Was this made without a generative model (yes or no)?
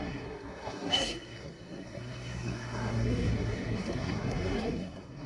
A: no